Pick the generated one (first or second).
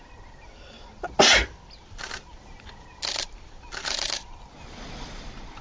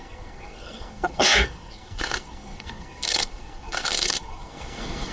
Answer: second